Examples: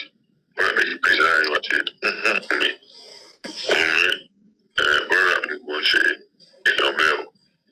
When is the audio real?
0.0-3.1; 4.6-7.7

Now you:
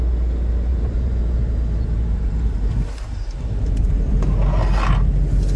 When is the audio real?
0.0-0.7; 4.1-5.6